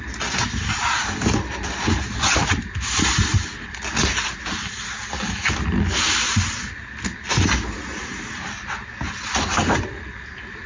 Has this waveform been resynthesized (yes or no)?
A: no